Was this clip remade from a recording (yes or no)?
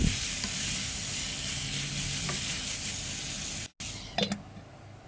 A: no